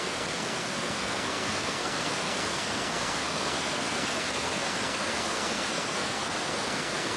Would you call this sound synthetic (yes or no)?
yes